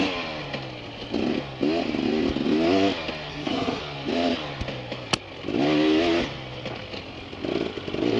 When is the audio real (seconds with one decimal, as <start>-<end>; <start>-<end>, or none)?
0.0-3.3; 3.8-8.2